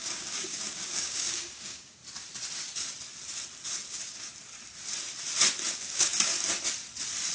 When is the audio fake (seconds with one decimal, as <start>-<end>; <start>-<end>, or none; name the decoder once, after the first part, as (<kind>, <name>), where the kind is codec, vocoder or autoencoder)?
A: 0.0-2.0 (codec, DAC); 3.9-4.3; 5.7-6.3